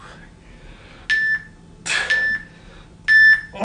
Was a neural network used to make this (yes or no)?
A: no